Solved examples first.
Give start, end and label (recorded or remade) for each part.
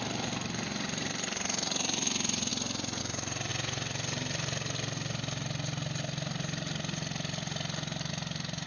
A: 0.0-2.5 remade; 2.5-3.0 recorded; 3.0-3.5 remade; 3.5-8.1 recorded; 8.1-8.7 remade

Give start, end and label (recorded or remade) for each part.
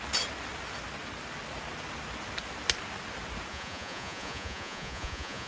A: 0.0-3.5 recorded; 3.5-5.5 remade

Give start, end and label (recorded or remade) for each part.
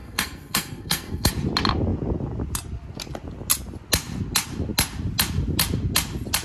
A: 0.0-1.3 remade; 1.3-6.4 recorded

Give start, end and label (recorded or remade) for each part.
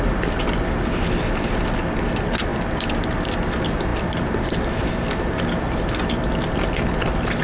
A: 0.0-7.4 recorded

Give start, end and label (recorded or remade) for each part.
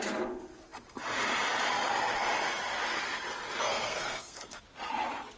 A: 0.0-3.7 recorded; 3.7-4.6 remade; 4.6-5.4 recorded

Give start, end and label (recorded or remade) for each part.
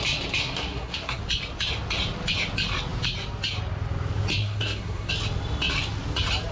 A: 0.0-0.4 recorded; 0.4-1.2 remade; 1.2-4.4 recorded; 4.4-5.1 remade; 5.1-6.5 recorded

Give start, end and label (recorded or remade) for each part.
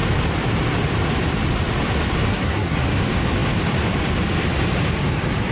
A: 0.0-2.3 recorded; 2.3-2.8 remade; 2.8-5.5 recorded